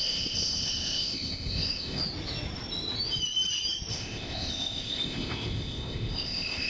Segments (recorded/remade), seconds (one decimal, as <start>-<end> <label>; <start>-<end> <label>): 0.0-2.0 remade; 2.0-3.9 recorded; 3.9-6.7 remade